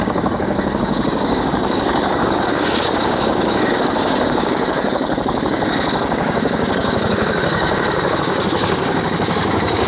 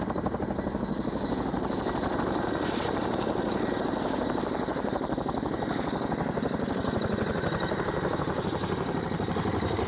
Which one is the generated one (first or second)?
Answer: first